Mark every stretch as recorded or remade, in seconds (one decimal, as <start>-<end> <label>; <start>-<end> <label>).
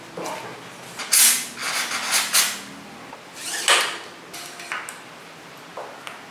0.0-6.3 recorded